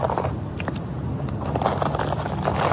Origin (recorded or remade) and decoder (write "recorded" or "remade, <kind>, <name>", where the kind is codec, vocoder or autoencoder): recorded